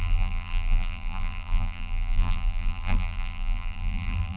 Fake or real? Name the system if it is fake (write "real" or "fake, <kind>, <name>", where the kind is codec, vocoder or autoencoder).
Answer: fake, vocoder, BigVGAN v2